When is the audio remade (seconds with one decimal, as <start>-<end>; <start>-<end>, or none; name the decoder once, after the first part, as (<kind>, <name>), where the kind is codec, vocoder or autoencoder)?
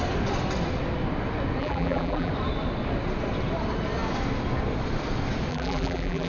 1.6-2.3 (vocoder, BigVGAN v2); 5.5-6.3